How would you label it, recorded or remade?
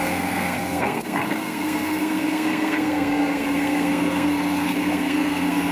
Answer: remade